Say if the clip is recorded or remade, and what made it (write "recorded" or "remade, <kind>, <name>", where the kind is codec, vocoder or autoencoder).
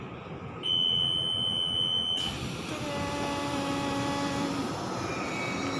recorded